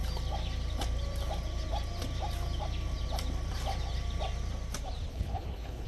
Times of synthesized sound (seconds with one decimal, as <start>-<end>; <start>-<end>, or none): 5.1-5.9